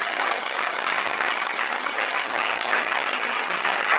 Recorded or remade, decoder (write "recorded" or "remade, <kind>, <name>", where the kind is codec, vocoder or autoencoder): remade, vocoder, HiFi-GAN